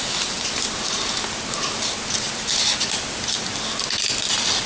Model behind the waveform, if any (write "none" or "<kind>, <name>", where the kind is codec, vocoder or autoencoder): none